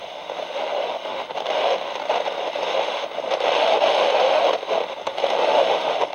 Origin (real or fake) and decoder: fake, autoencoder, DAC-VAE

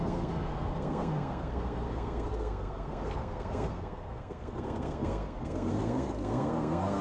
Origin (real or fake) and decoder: fake, codec, SNAC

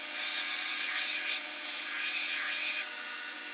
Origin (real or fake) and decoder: fake, vocoder, WaveNeXt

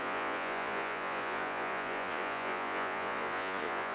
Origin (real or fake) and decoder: fake, vocoder, Vocos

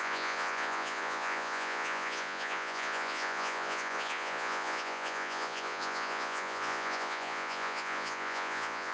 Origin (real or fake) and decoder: fake, vocoder, Vocos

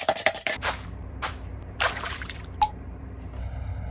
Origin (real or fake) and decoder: fake, vocoder, BigVGAN v2